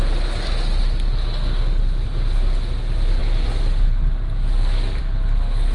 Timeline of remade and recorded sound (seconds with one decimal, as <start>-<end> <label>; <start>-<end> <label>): 0.0-5.7 recorded